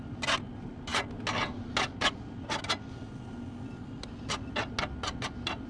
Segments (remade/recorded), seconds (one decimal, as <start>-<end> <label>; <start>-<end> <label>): 0.0-5.7 recorded